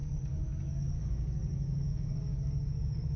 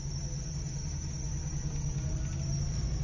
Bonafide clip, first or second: second